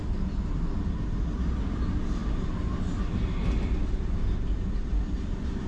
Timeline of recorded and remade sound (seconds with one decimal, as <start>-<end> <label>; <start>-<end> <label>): 0.0-5.7 recorded